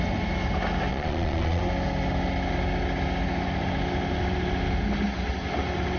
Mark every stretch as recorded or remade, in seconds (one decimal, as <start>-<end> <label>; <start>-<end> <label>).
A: 0.0-0.9 recorded; 0.9-1.6 remade; 1.6-6.0 recorded